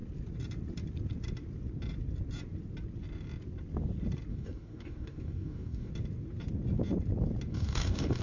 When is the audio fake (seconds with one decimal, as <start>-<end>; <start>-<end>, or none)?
4.3-5.9; 7.5-8.2